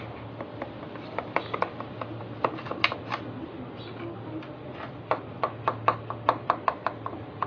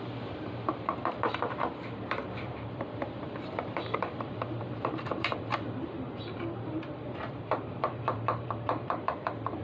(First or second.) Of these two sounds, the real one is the first